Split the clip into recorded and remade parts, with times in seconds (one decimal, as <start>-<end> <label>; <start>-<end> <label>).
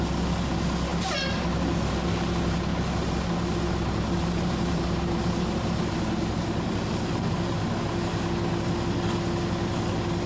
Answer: 0.0-2.7 recorded; 2.7-5.9 remade; 5.9-10.3 recorded